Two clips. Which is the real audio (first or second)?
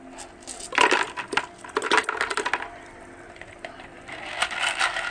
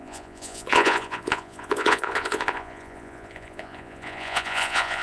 first